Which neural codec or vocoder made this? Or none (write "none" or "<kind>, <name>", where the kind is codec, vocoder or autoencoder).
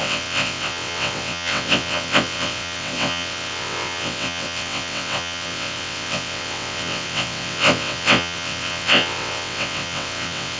vocoder, WaveNeXt